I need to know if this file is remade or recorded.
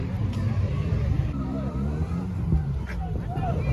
remade